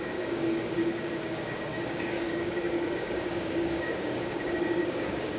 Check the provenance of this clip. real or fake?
fake